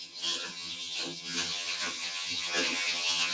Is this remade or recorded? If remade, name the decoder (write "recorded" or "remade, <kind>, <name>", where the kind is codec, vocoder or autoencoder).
remade, vocoder, HiFi-GAN